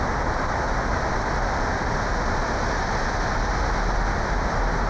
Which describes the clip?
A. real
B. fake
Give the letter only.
A